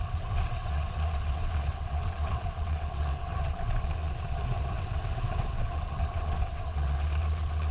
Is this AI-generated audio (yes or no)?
yes